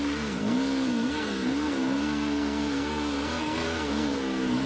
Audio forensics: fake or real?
fake